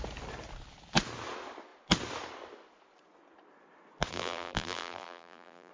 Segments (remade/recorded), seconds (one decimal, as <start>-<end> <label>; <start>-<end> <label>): 0.0-4.1 recorded; 4.1-5.7 remade